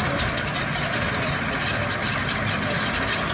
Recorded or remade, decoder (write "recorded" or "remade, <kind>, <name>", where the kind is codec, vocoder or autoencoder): recorded